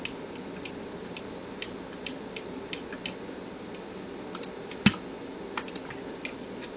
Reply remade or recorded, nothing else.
recorded